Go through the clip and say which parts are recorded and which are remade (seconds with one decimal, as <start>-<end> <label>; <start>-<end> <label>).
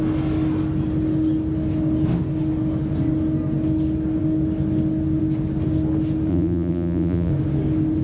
0.0-6.3 recorded; 6.3-7.3 remade; 7.3-8.0 recorded